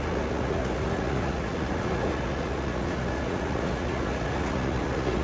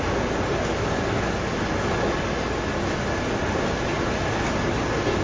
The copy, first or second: first